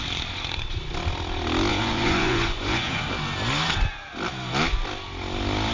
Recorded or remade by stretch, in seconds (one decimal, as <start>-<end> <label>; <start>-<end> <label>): 0.0-1.7 recorded; 1.7-3.0 remade; 3.0-5.7 recorded